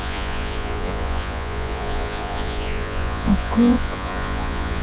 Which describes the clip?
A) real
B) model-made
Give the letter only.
B